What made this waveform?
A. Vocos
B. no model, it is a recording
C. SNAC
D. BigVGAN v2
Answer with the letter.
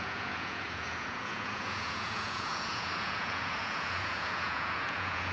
A